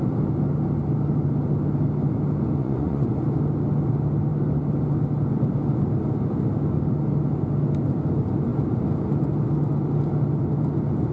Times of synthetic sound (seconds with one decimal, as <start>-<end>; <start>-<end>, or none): 2.6-3.1